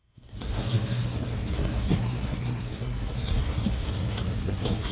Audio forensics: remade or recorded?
remade